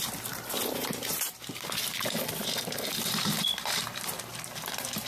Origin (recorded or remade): remade